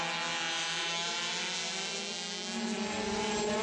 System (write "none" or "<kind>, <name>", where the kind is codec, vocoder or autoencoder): none